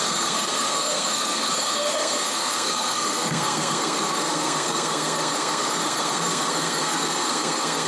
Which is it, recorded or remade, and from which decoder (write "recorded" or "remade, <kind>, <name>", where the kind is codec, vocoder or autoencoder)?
remade, codec, SNAC